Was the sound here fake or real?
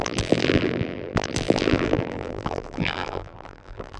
fake